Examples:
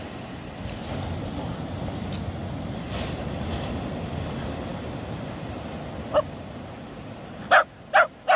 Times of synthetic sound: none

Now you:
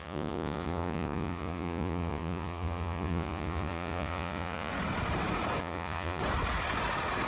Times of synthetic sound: 0.0-4.7; 5.6-6.2

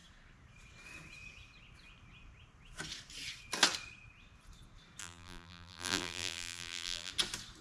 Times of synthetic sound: 5.0-7.1

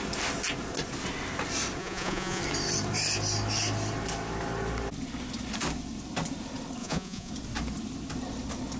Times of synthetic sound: 1.8-2.4; 6.8-7.3

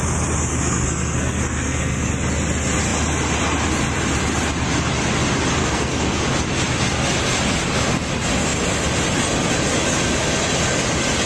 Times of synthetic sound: 0.4-2.1; 5.6-6.2

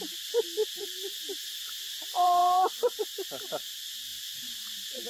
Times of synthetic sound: 0.0-4.1